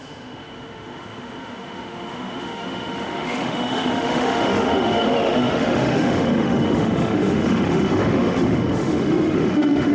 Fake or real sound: fake